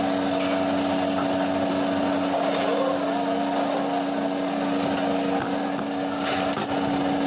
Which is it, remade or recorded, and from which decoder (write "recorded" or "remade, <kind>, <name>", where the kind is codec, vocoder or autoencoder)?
recorded